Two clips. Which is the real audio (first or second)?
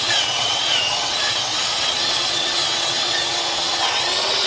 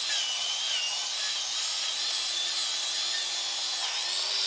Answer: second